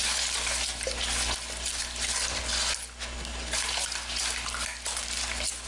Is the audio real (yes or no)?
yes